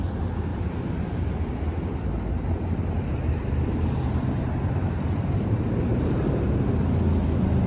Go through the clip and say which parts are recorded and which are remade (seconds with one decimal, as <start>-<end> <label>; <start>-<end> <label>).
0.0-0.5 recorded; 0.5-1.3 remade; 1.3-3.1 recorded; 3.1-5.6 remade; 5.6-7.7 recorded